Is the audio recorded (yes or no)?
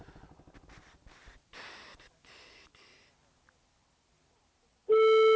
yes